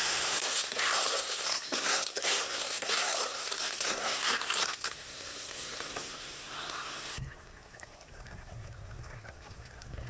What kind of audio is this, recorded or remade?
remade